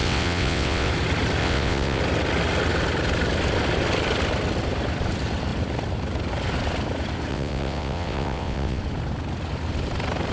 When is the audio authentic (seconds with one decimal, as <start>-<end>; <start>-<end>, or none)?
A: 0.9-1.4; 2.0-7.3; 8.8-10.3